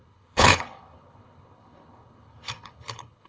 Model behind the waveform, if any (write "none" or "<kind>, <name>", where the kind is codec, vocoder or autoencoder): codec, HILCodec